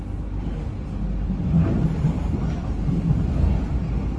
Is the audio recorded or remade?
recorded